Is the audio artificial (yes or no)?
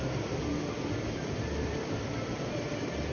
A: no